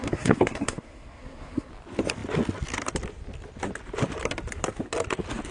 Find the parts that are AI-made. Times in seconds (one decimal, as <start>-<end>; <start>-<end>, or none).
0.0-1.7

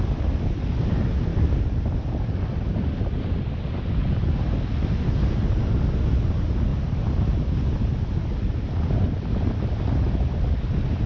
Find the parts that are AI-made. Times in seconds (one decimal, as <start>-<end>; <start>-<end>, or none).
none

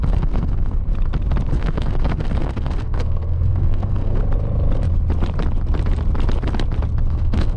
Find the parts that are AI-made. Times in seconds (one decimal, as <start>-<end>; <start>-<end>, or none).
0.0-0.9; 1.5-4.2; 7.1-7.6

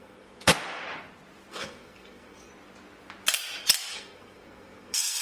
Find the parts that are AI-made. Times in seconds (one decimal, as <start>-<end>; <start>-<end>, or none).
0.0-0.5; 1.5-2.5; 3.9-5.2